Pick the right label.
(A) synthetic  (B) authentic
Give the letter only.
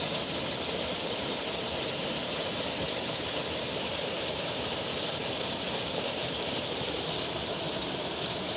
A